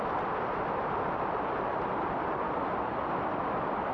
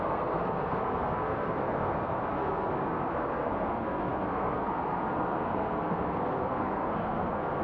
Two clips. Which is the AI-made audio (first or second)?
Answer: second